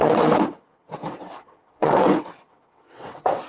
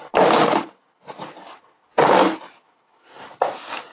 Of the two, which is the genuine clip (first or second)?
second